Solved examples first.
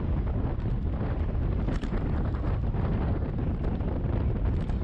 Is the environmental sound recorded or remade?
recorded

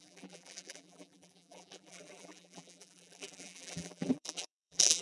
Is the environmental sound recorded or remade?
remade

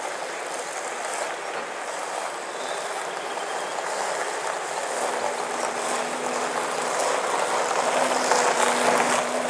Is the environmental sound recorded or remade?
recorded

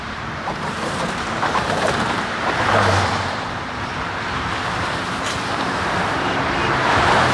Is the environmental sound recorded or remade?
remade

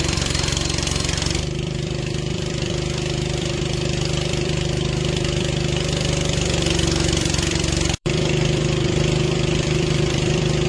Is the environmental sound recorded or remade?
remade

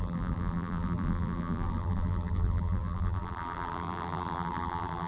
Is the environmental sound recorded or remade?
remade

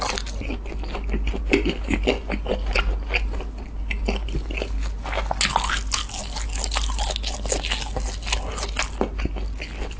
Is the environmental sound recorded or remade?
recorded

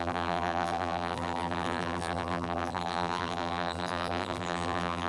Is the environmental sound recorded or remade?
remade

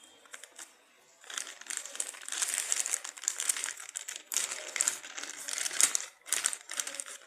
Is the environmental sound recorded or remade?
remade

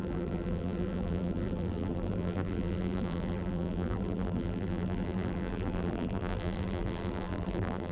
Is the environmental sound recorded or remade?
remade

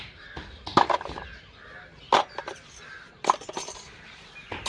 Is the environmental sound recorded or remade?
recorded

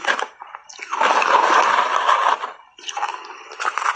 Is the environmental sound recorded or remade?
remade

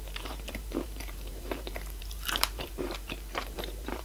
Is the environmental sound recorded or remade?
remade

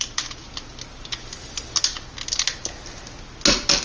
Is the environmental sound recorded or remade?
recorded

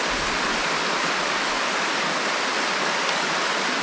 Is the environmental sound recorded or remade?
recorded